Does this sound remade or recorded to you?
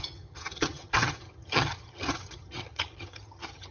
remade